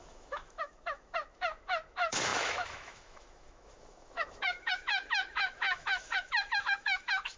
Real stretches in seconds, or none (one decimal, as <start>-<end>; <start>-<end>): none